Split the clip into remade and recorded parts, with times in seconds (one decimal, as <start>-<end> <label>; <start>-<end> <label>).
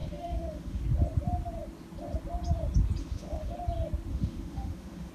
0.0-0.8 remade; 0.8-3.0 recorded; 3.0-3.5 remade; 3.5-4.1 recorded; 4.1-5.1 remade